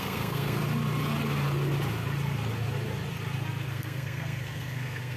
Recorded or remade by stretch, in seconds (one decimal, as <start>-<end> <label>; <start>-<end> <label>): 0.0-0.6 remade; 0.6-3.7 recorded; 3.7-5.2 remade